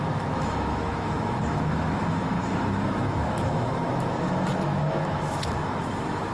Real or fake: fake